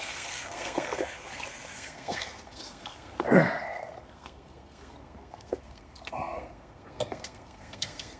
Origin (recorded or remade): remade